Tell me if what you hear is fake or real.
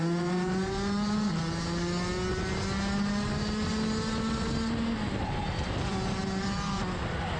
real